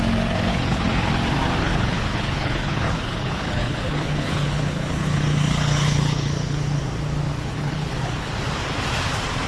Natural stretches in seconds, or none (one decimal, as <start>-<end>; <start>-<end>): 0.0-0.5; 1.1-1.6; 6.8-7.3; 8.3-9.5